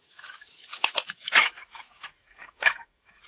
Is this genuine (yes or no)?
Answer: no